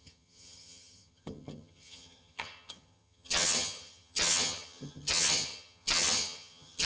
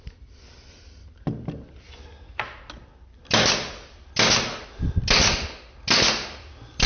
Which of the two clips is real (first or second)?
second